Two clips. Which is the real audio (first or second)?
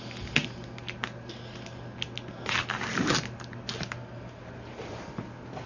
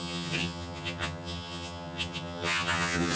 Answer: first